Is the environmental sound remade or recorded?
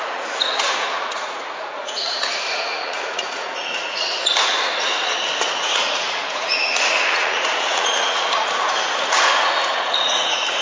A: remade